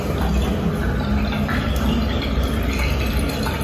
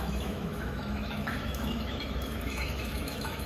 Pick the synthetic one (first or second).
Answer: second